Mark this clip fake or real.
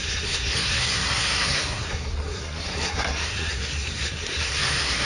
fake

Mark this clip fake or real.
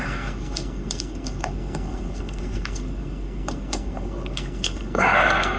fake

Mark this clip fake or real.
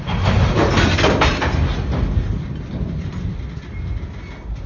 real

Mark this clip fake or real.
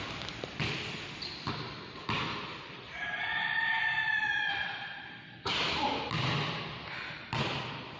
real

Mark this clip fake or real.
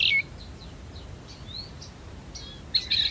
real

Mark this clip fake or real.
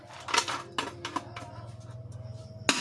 real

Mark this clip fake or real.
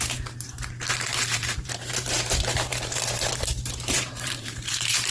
fake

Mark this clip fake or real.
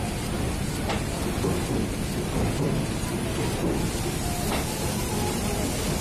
real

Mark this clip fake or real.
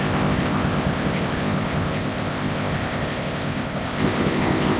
fake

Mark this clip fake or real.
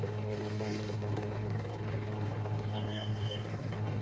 fake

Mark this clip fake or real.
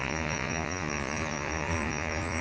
fake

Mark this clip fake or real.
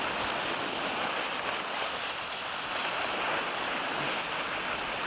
real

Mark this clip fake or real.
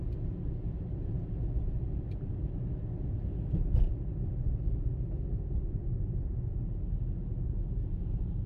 real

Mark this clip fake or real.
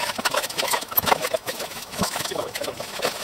fake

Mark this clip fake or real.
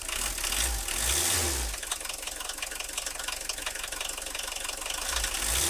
real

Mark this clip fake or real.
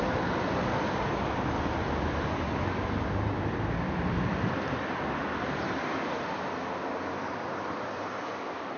fake